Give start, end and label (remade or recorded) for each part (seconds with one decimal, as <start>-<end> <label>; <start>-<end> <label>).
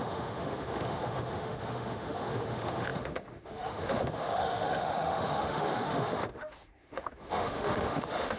0.0-8.4 remade